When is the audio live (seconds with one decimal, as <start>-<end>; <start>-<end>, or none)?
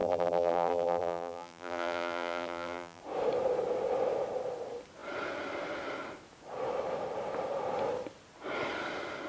3.0-9.3